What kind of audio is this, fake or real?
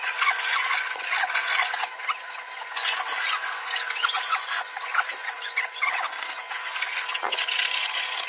fake